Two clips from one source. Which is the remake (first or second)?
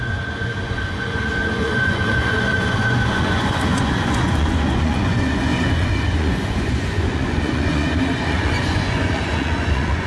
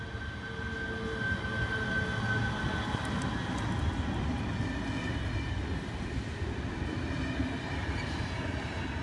first